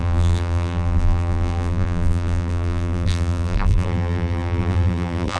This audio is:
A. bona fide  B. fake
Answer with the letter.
B